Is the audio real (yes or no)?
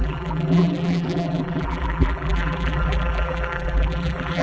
no